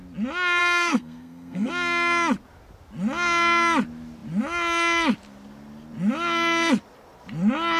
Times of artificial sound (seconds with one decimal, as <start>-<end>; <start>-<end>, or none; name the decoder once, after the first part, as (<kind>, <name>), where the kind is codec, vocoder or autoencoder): 0.6-1.7 (codec, SNAC)